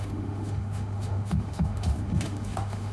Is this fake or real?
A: fake